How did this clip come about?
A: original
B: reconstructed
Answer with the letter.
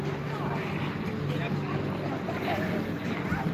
A